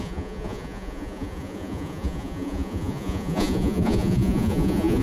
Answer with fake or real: fake